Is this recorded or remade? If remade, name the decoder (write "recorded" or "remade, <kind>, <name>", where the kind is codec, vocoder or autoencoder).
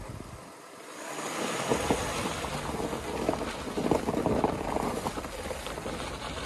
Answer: recorded